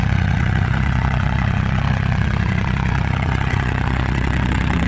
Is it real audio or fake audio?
fake